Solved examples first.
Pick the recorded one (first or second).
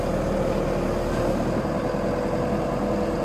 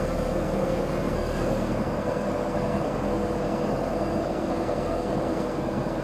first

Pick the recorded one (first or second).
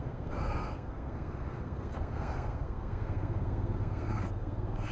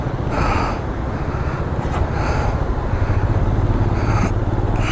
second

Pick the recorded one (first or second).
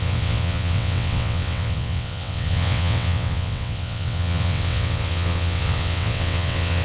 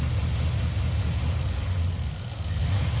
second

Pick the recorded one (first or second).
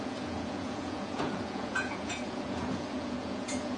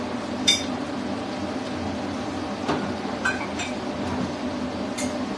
second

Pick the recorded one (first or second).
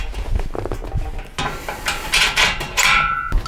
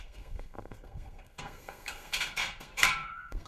first